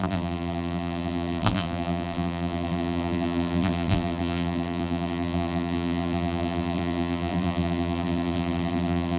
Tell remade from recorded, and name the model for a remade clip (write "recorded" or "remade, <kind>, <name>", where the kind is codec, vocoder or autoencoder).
remade, vocoder, BigVGAN v2